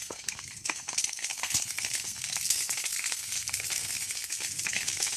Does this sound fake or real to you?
fake